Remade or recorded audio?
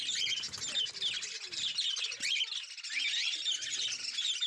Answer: recorded